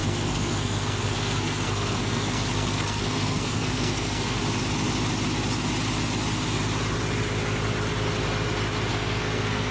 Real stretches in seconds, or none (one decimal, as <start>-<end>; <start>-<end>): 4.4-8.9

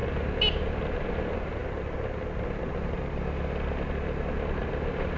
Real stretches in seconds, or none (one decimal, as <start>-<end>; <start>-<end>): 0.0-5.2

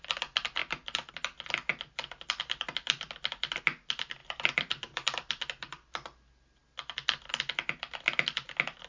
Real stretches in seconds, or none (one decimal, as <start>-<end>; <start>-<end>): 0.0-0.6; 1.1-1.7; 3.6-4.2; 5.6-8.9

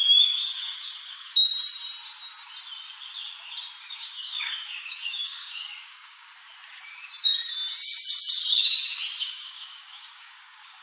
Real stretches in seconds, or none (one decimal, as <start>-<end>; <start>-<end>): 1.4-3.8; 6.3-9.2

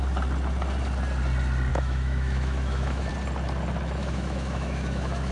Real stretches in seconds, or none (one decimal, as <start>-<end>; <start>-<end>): 0.0-1.7; 3.1-4.0

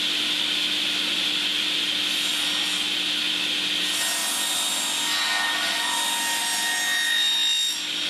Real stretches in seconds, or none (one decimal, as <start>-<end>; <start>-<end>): 0.0-8.1